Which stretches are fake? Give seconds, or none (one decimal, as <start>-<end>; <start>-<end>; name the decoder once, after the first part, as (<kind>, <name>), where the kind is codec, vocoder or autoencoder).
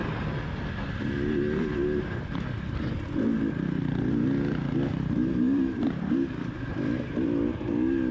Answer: 4.9-6.3 (vocoder, BigVGAN v2)